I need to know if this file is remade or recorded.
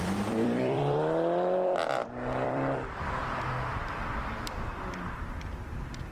remade